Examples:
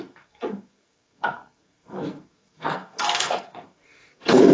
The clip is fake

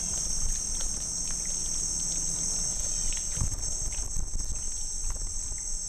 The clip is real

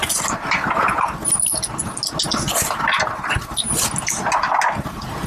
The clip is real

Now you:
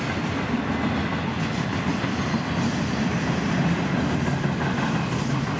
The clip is real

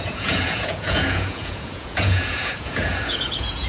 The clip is fake